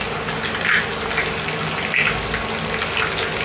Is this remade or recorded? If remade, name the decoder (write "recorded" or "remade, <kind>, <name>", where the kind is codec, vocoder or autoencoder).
recorded